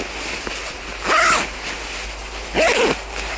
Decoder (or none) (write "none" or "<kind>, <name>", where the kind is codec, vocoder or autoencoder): none